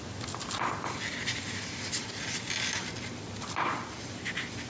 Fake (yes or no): no